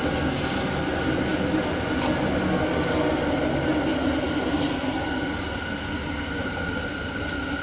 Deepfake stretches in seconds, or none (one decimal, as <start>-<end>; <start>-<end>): none